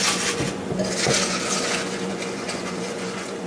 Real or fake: fake